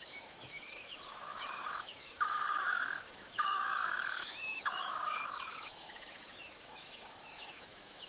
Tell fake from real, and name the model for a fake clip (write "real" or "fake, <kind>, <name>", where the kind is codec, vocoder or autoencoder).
fake, autoencoder, DAC-VAE